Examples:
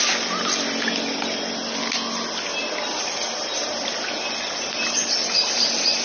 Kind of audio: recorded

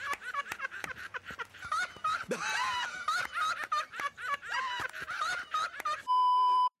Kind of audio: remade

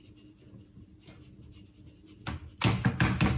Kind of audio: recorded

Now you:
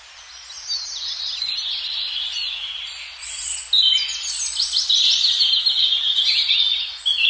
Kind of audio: recorded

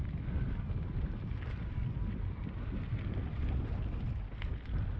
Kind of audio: recorded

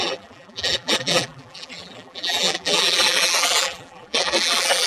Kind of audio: remade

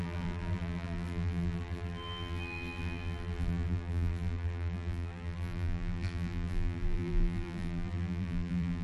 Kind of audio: remade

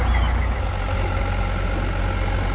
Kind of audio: recorded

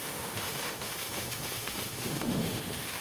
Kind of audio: remade